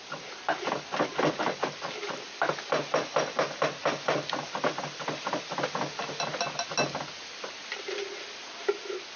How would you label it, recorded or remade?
recorded